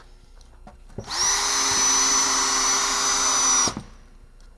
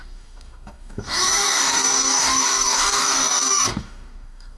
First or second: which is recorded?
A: first